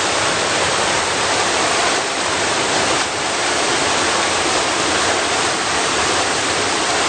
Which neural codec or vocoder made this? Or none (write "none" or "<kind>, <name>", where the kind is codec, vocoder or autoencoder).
vocoder, BigVGAN v2